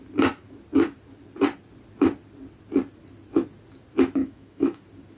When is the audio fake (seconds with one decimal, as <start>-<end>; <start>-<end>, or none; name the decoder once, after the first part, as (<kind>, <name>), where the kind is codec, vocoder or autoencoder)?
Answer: 4.2-4.8 (autoencoder, DAC-VAE)